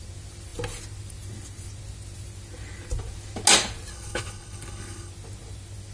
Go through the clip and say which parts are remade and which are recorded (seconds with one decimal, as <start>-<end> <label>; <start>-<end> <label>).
0.0-3.9 recorded; 3.9-5.1 remade; 5.1-5.9 recorded